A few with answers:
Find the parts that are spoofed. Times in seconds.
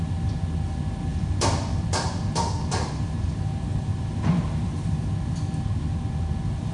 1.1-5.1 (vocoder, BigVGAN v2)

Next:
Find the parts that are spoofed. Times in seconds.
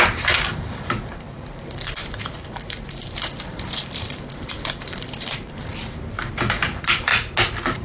0.0-7.1 (vocoder, BigVGAN v2)